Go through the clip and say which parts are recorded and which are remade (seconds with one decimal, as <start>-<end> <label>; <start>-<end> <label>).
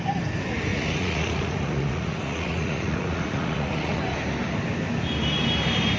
0.0-0.7 recorded; 0.7-4.0 remade; 4.0-6.0 recorded